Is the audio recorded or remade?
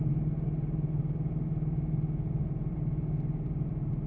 remade